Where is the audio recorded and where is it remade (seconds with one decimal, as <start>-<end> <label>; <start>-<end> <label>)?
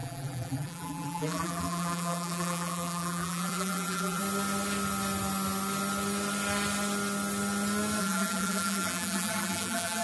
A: 0.0-4.2 remade; 4.2-8.0 recorded; 8.0-10.0 remade